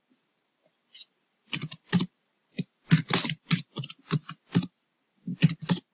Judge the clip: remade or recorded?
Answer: recorded